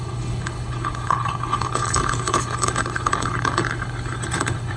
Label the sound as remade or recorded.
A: remade